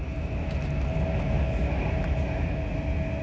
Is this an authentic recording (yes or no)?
yes